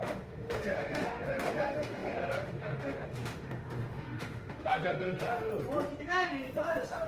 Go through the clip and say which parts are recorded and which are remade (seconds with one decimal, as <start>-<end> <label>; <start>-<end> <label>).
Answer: 0.0-5.5 remade; 5.5-6.0 recorded; 6.0-7.1 remade